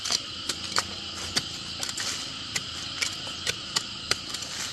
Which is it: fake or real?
real